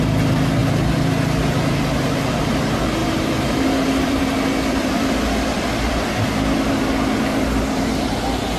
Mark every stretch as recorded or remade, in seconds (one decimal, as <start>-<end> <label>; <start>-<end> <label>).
0.0-3.0 recorded; 3.0-6.7 remade; 6.7-8.6 recorded